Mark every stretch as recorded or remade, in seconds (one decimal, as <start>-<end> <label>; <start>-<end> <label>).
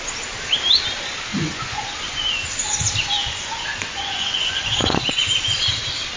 0.0-1.3 recorded; 1.3-2.2 remade; 2.2-3.2 recorded; 3.2-5.2 remade; 5.2-6.2 recorded